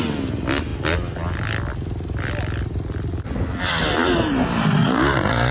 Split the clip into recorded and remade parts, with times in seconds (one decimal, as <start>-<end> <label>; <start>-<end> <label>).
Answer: 0.0-4.8 recorded; 4.8-5.5 remade